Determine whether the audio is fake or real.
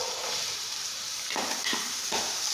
fake